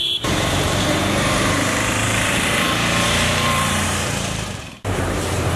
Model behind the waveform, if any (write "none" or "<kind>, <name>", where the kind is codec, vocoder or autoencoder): vocoder, BigVGAN v2